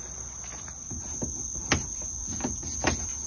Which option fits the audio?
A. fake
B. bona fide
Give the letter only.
B